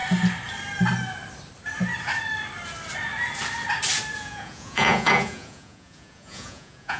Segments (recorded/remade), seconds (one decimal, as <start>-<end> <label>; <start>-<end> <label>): 0.0-4.2 recorded; 4.2-7.0 remade